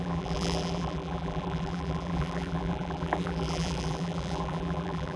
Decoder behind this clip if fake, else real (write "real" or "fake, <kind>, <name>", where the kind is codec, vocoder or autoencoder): fake, vocoder, BigVGAN v2